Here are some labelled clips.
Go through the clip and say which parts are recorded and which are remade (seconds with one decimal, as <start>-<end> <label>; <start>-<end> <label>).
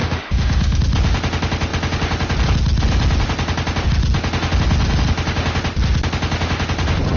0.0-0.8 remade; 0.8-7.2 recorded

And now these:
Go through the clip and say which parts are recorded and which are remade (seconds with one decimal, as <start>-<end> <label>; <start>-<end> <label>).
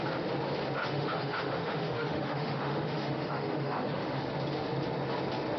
0.0-0.8 recorded; 0.8-4.2 remade; 4.2-5.6 recorded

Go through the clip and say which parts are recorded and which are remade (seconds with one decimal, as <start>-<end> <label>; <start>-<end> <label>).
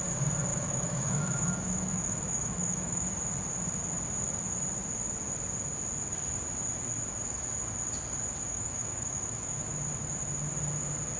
0.0-0.5 recorded; 0.5-3.1 remade; 3.1-8.5 recorded; 8.5-9.7 remade; 9.7-11.2 recorded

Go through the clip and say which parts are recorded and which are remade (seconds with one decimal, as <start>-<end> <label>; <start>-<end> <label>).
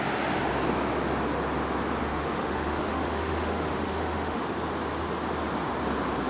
0.0-2.0 recorded; 2.0-4.5 remade; 4.5-6.3 recorded